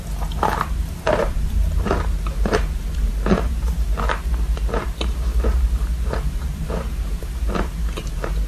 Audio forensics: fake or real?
fake